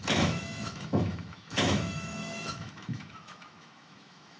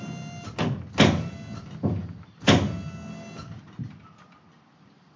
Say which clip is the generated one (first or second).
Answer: first